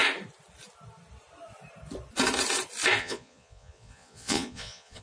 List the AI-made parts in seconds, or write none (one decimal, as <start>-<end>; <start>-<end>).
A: 3.0-5.0